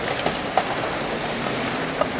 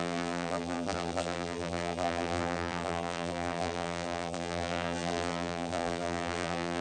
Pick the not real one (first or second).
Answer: second